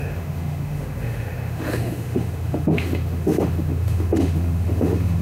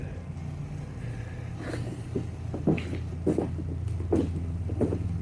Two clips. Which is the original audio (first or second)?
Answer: second